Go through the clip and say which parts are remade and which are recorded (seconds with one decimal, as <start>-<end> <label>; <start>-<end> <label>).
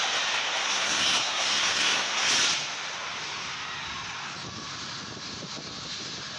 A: 0.0-0.6 recorded; 0.6-2.3 remade; 2.3-6.4 recorded